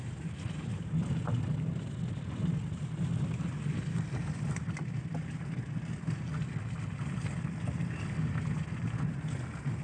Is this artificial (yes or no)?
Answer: no